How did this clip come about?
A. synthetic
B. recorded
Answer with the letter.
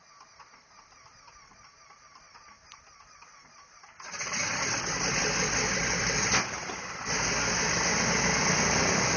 B